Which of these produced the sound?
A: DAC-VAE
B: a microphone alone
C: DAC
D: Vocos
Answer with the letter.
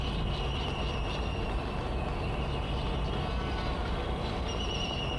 B